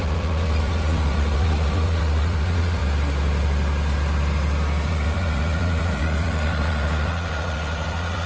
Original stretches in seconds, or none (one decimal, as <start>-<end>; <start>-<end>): 2.8-4.9